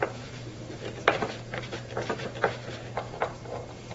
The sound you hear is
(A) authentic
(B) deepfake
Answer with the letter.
B